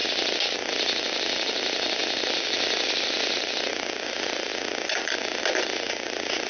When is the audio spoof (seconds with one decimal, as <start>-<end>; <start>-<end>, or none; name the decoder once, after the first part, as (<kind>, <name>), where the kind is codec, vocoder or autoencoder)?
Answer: none